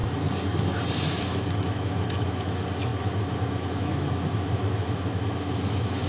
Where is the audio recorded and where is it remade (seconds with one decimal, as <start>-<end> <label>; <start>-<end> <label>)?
0.0-1.2 recorded; 1.2-6.1 remade